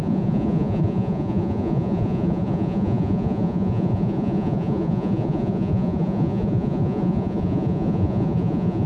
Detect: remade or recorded remade